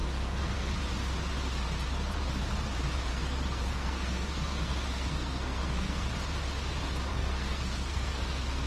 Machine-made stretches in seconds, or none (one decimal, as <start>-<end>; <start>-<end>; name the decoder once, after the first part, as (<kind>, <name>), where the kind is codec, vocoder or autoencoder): 0.0-0.7 (codec, SNAC); 3.1-6.1; 7.1-8.7